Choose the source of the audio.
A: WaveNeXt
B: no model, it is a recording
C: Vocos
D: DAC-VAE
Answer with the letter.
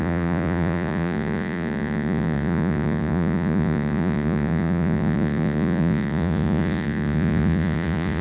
C